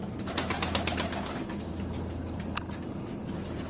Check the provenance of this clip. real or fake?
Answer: real